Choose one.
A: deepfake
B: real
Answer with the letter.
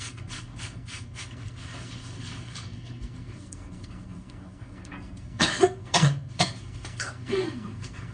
A